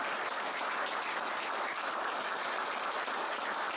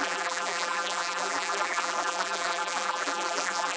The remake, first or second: second